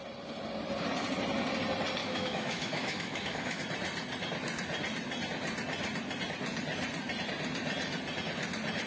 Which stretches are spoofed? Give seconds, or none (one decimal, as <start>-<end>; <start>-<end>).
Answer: 2.0-3.6